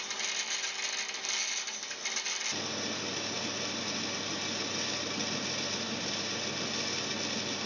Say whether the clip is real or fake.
real